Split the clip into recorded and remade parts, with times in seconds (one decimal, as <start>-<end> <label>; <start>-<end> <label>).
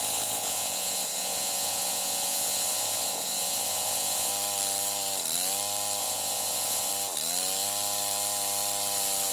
0.0-4.3 remade; 4.3-6.0 recorded; 6.0-6.9 remade; 6.9-9.3 recorded